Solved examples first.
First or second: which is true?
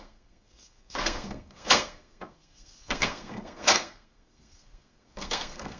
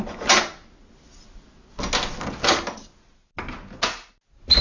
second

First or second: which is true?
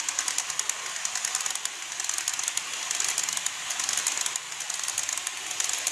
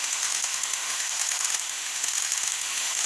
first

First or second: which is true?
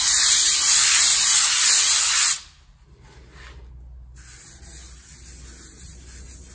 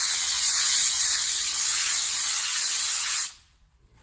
first